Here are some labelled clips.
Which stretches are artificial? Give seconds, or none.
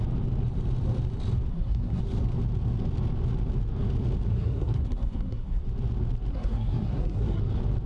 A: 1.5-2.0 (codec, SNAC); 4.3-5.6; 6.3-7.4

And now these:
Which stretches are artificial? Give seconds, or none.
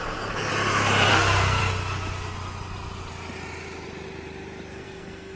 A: 0.0-0.5 (codec, SNAC); 1.1-1.6; 4.7-5.4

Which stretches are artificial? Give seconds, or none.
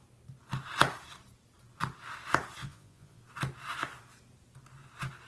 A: 2.6-3.2 (vocoder, Vocos)